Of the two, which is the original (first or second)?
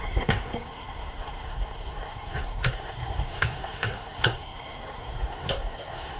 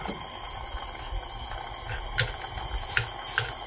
second